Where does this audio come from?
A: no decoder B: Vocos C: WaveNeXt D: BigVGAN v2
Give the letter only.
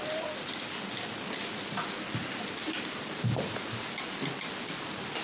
A